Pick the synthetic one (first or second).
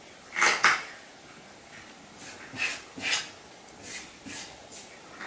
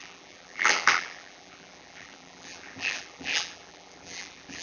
second